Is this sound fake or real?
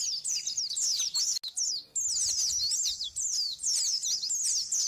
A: real